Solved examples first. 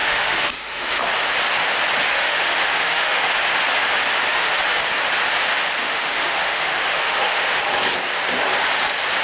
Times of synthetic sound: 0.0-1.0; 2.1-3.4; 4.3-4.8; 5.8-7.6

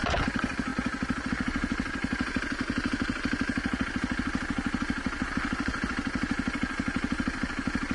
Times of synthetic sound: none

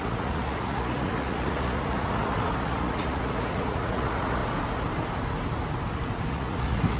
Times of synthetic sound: 0.0-4.4; 6.3-7.0

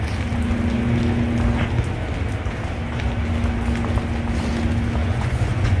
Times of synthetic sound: 5.0-5.8

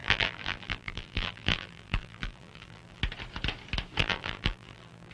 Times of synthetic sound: 0.0-3.0; 4.0-5.1

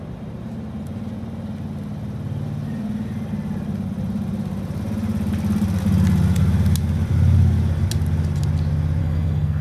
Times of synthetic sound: 9.0-9.6